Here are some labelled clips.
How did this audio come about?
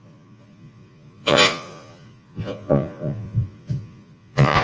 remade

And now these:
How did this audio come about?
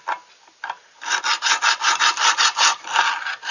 recorded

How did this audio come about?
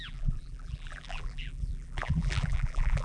remade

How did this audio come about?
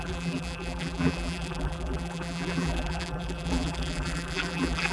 remade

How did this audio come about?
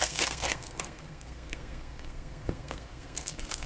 remade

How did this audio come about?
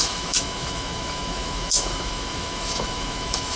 remade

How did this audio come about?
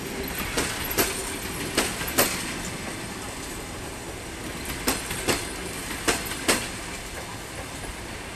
recorded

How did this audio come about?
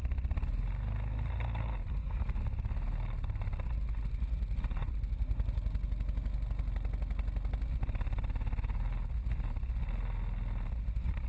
recorded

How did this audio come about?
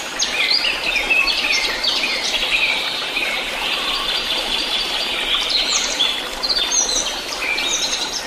remade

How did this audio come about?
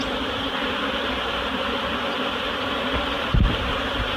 remade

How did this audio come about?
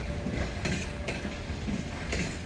remade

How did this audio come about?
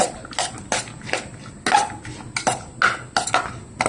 recorded